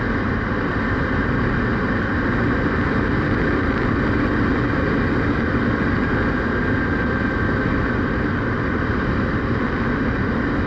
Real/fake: real